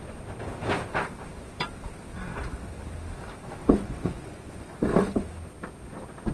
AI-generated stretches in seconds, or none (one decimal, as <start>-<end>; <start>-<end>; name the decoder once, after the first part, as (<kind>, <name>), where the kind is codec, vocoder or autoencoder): 3.6-4.7 (vocoder, Vocos)